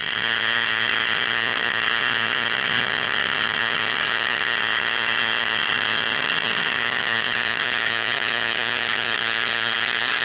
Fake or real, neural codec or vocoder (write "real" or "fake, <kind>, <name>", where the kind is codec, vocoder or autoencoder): fake, vocoder, HiFi-GAN